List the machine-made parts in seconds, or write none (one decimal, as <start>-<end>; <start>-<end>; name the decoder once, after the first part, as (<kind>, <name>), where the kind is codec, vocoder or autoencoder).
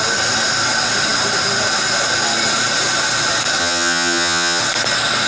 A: 3.6-4.6 (vocoder, HiFi-GAN)